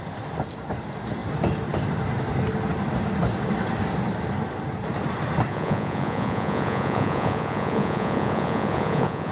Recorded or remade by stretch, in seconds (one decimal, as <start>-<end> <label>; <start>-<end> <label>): 0.0-5.5 recorded; 5.5-9.3 remade